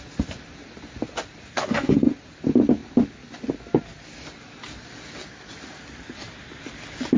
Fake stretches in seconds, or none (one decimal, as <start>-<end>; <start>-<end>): 1.5-2.1